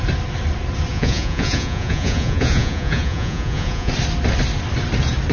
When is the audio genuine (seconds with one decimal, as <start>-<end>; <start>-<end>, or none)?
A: 0.0-0.9; 3.9-5.3